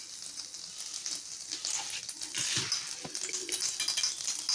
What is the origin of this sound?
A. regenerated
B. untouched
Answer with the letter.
B